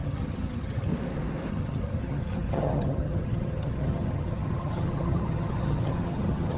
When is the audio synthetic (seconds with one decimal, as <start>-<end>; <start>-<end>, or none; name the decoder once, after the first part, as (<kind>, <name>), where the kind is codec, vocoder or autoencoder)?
0.0-0.9 (vocoder, HiFi-GAN); 1.5-6.6